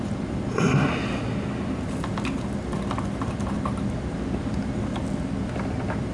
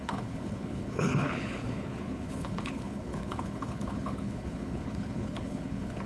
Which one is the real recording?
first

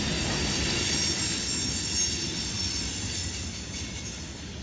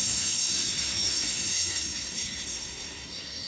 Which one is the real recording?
first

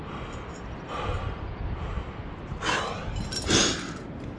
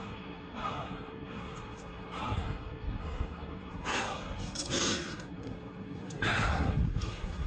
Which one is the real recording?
first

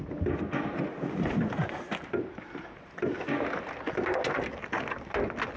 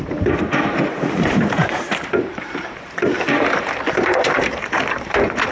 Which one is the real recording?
first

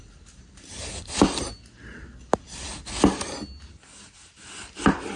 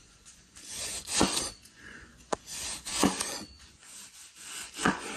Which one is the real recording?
first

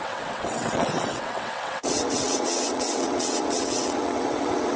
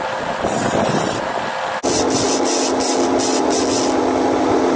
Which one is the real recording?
second